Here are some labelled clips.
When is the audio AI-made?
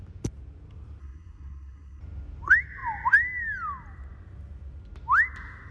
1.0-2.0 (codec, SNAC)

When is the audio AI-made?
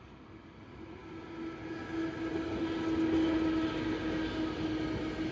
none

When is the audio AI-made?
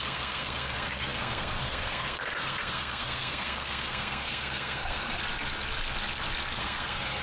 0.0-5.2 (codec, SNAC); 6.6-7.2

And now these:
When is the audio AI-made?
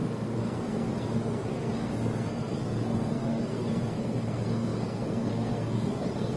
0.0-6.4 (codec, SNAC)